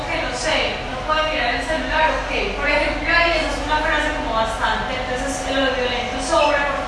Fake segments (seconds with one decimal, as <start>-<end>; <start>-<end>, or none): 0.9-1.8